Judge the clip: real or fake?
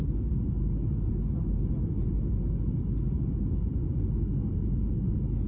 real